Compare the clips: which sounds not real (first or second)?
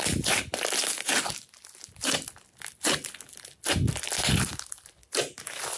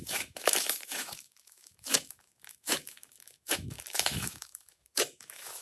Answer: second